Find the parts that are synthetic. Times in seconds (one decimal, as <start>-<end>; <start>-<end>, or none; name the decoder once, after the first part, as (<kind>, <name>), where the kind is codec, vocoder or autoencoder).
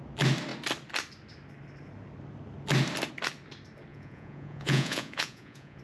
3.9-5.8 (vocoder, Vocos)